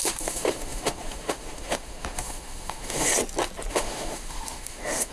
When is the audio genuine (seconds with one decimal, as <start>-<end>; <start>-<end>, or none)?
3.1-3.7